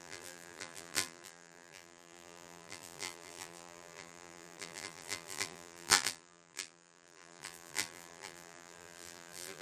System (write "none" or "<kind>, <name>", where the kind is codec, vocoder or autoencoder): vocoder, BigVGAN v2